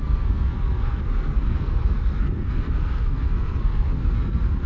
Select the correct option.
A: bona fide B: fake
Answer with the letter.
B